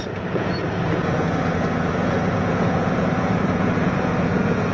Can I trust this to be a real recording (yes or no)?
no